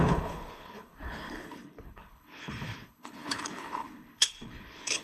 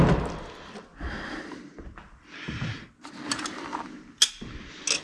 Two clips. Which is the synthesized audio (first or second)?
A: first